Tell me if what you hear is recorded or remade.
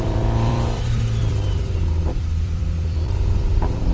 remade